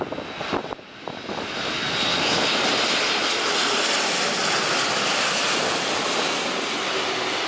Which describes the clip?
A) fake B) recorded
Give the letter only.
B